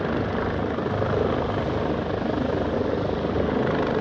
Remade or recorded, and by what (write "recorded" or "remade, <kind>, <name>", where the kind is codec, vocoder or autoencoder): recorded